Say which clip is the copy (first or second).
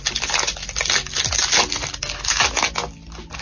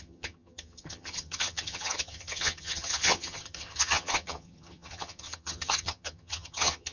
second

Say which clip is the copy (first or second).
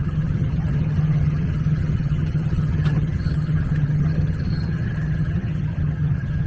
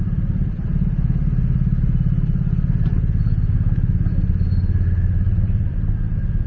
first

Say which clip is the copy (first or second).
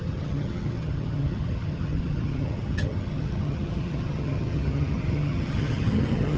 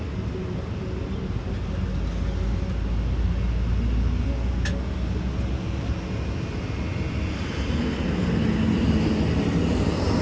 first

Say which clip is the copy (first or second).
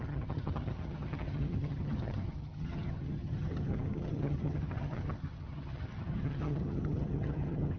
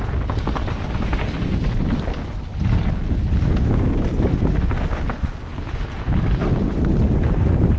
first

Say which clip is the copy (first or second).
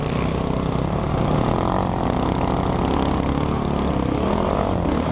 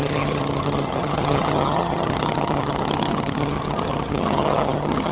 second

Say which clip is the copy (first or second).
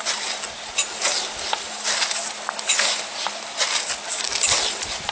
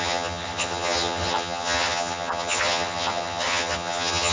second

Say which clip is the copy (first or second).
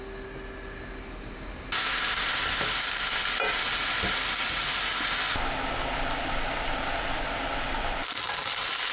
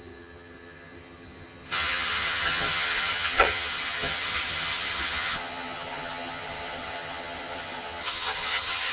second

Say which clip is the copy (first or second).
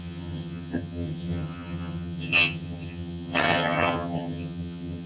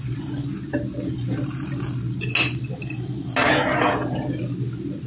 first